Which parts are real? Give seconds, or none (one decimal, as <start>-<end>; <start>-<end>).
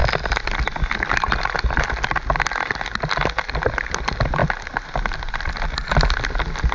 0.0-6.7